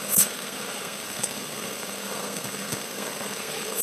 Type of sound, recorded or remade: remade